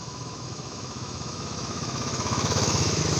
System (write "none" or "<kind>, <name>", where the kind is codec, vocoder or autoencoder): autoencoder, DAC-VAE